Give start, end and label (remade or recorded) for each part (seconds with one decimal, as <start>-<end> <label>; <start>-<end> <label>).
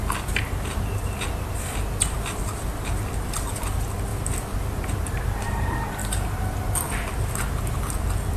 0.0-8.4 recorded